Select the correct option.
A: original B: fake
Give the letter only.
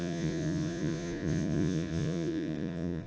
B